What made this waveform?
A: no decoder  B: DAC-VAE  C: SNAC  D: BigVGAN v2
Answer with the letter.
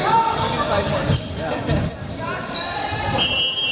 A